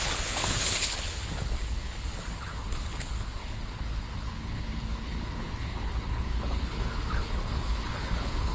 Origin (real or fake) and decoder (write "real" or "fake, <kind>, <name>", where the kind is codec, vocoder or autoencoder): fake, codec, HILCodec